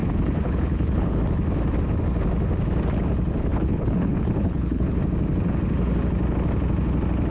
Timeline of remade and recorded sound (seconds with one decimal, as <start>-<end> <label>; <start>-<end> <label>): 0.0-1.2 remade; 1.2-3.5 recorded; 3.5-5.0 remade; 5.0-7.3 recorded